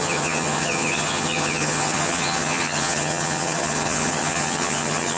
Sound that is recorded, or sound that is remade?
remade